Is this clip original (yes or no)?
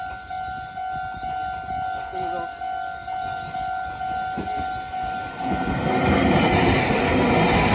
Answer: yes